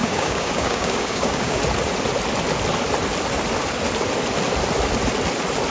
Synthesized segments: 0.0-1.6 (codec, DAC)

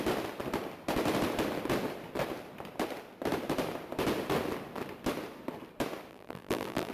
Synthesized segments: 6.1-6.9 (vocoder, BigVGAN v2)

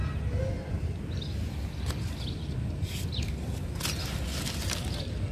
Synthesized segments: none